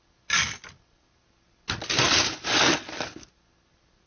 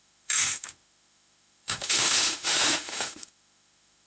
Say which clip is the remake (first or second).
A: second